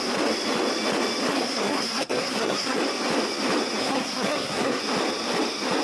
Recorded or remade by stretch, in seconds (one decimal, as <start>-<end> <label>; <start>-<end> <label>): 0.0-1.3 recorded; 1.3-2.8 remade; 2.8-3.8 recorded; 3.8-4.8 remade; 4.8-5.8 recorded